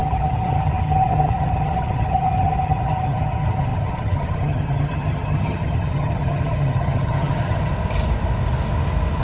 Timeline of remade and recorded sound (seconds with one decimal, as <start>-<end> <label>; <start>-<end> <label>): 0.0-7.7 remade; 7.7-9.2 recorded